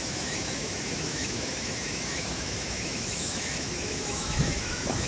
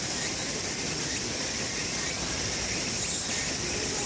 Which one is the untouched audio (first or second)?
second